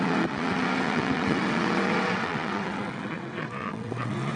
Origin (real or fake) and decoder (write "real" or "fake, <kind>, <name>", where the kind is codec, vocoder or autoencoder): fake, vocoder, WaveNeXt